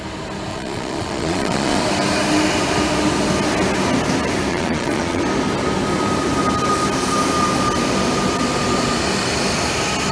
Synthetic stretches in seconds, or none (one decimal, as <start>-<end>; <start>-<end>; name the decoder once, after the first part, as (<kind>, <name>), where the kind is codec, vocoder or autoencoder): 0.5-1.8 (vocoder, Vocos); 4.5-5.2

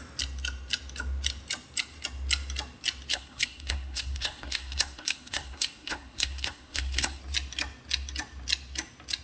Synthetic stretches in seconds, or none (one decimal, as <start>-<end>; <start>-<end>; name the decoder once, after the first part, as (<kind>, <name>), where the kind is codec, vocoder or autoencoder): 3.1-7.2 (codec, SNAC)

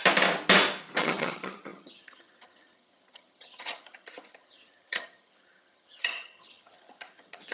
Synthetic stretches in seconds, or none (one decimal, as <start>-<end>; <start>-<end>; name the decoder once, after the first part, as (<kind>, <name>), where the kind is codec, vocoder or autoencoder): 1.0-7.5 (vocoder, HiFi-GAN)

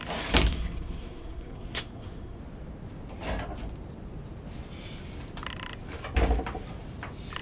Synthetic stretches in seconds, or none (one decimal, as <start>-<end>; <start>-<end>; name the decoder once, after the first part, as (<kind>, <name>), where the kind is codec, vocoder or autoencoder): 0.5-2.4 (codec, SNAC)

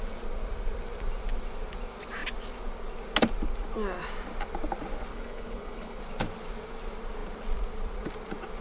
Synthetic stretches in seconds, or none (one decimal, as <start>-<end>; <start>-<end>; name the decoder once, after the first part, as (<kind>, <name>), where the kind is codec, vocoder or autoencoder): 5.1-6.0 (codec, HILCodec)